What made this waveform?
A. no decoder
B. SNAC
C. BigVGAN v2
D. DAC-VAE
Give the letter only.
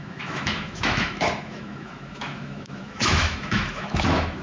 D